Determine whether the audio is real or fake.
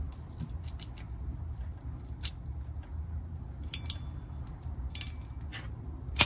real